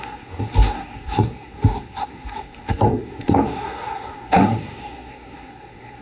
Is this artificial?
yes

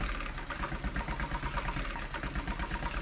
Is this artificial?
no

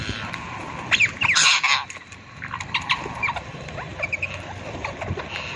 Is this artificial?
yes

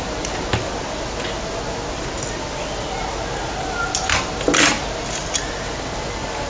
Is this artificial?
no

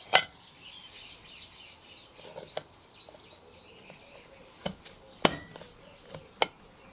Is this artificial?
no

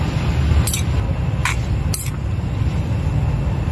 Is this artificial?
no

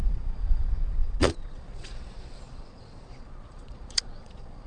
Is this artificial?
yes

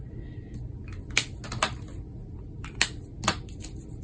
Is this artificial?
no